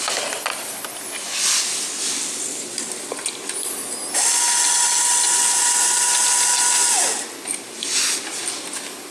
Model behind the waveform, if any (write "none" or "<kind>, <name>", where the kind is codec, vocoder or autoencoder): none